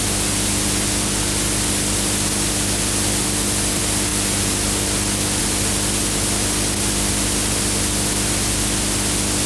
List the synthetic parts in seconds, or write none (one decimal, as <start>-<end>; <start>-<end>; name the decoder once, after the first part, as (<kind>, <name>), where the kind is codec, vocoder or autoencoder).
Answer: none

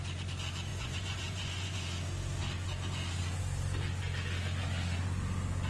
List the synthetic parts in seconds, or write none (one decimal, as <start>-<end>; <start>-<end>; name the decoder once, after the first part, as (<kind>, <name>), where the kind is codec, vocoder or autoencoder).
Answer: 0.7-1.8 (vocoder, Vocos)

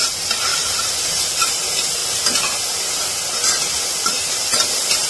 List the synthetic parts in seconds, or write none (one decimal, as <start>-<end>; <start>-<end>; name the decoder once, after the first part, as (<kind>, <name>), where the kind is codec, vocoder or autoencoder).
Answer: 0.5-1.0 (vocoder, BigVGAN v2)

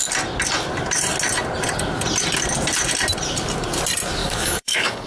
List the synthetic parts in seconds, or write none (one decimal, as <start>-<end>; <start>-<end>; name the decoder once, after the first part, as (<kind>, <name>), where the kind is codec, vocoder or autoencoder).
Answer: 4.2-5.1 (codec, DAC)

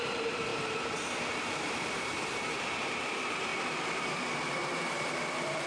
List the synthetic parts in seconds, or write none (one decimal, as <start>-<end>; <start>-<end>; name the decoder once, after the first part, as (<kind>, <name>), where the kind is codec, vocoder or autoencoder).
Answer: 0.0-3.5 (vocoder, BigVGAN v2); 4.8-5.7

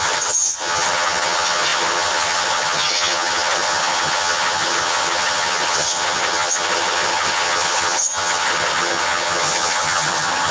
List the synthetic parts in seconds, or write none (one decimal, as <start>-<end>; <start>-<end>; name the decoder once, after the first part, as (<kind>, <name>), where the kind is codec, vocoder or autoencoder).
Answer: 0.0-10.5 (vocoder, HiFi-GAN)

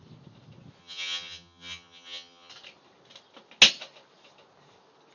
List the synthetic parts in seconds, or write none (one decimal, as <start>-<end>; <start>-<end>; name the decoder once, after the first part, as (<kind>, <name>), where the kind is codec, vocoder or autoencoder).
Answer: 0.8-2.5 (vocoder, HiFi-GAN)

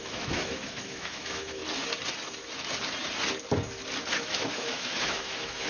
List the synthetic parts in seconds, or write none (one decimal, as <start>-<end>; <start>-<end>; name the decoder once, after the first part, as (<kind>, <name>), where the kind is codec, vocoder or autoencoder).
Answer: 0.0-1.6 (autoencoder, DAC-VAE); 4.2-5.7